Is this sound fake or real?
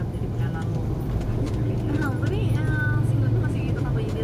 real